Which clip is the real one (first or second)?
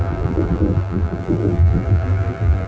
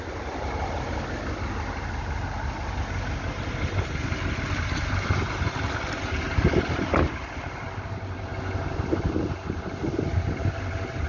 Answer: second